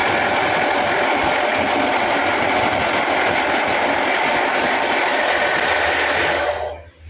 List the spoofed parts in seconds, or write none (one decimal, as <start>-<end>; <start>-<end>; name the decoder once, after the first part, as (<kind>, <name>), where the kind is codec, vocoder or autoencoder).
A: none